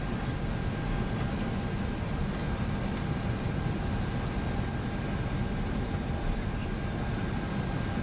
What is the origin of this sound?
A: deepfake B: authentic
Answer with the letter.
B